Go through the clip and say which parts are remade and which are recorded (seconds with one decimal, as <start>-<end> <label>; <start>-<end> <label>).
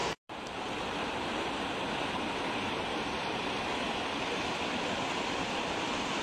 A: 0.0-3.7 remade; 3.7-6.2 recorded